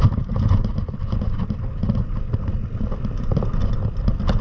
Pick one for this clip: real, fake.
real